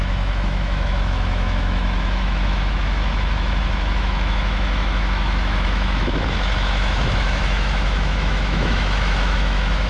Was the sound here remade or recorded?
remade